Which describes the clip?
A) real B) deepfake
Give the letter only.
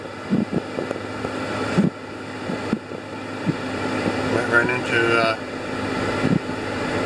A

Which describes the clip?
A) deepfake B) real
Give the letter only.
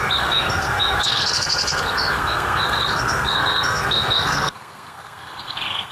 A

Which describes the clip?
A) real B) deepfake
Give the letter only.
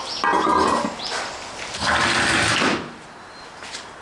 A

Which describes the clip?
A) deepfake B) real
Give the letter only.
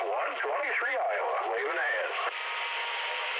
B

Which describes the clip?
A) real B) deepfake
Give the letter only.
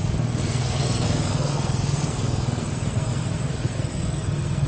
B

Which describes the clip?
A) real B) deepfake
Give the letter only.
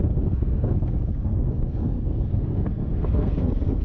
B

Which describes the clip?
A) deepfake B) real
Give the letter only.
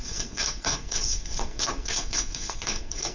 A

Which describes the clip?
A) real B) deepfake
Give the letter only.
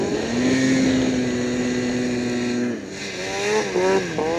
A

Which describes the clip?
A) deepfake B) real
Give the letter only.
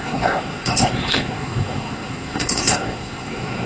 A